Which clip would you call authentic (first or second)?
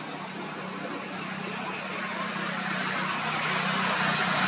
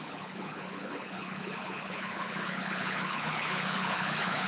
first